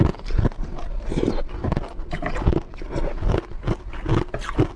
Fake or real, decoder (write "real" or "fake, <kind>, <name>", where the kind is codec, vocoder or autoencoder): real